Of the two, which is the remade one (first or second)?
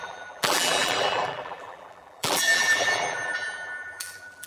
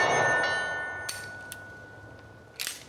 first